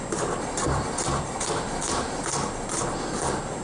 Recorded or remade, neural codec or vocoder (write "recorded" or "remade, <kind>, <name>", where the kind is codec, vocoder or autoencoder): recorded